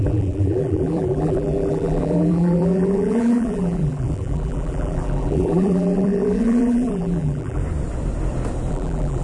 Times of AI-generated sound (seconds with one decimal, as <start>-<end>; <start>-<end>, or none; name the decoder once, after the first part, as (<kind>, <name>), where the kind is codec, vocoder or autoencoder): 0.0-7.6 (vocoder, BigVGAN v2); 8.7-9.2

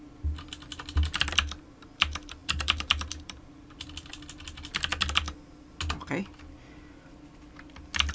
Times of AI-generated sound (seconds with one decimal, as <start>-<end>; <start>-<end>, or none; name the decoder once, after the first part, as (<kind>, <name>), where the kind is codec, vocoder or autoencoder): 2.4-3.8 (vocoder, BigVGAN v2)

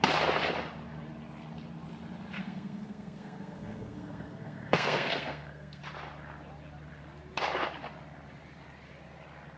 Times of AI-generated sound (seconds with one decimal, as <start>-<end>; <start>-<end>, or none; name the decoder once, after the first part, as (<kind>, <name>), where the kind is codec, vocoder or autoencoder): 2.4-5.8 (codec, SNAC)